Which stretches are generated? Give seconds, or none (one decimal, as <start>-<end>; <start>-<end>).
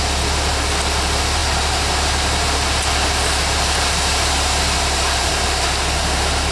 1.4-5.2